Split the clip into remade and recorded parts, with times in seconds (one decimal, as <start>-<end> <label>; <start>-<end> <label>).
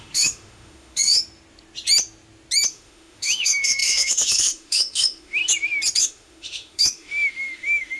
0.0-1.2 remade; 1.2-2.7 recorded; 2.7-5.4 remade; 5.4-6.0 recorded; 6.0-8.0 remade